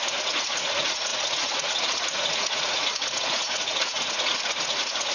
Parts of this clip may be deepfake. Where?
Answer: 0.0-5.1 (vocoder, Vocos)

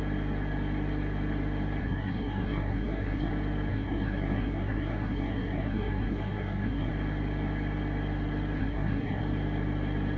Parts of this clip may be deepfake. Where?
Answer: 1.8-3.3 (codec, SNAC); 3.7-6.9; 8.6-9.2

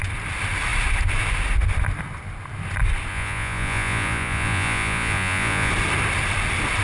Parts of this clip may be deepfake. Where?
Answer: 3.1-5.7 (vocoder, Vocos)